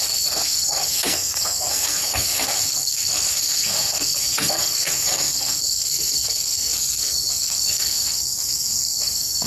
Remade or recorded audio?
remade